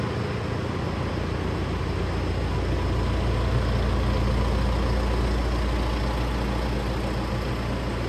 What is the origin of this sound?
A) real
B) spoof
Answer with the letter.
A